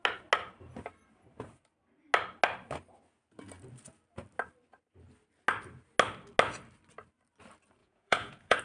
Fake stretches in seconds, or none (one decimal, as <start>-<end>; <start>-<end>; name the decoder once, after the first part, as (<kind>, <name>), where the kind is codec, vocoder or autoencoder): 7.8-8.6 (vocoder, Vocos)